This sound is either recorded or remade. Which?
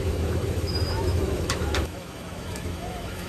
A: remade